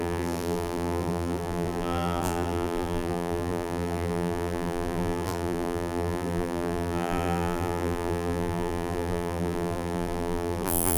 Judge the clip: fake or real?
fake